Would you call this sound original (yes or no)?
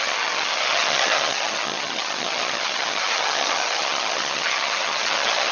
no